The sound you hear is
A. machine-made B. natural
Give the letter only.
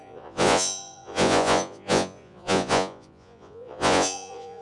A